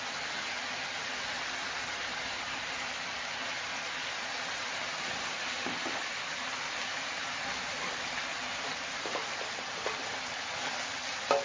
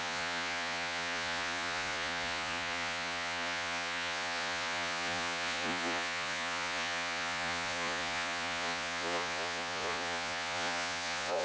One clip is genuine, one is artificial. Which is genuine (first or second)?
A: first